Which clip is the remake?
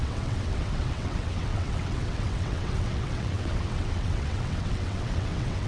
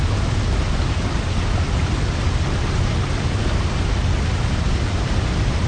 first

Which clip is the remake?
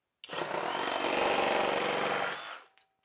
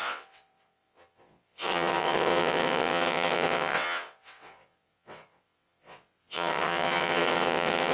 second